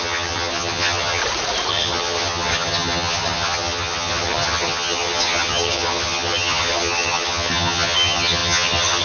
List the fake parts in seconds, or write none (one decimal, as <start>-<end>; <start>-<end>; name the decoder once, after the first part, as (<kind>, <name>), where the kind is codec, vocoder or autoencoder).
0.0-1.2 (vocoder, HiFi-GAN); 1.7-9.0